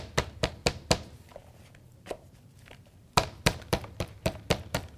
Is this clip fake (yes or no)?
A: yes